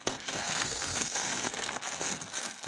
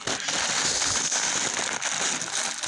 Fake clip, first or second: first